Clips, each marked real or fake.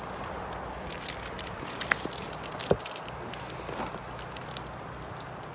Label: real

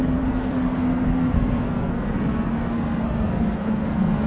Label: fake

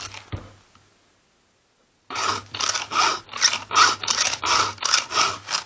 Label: real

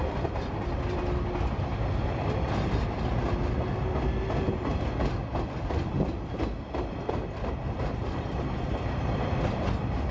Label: real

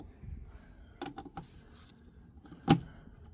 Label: real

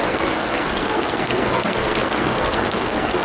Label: fake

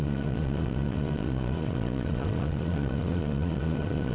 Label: fake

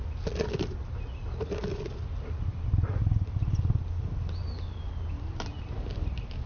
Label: real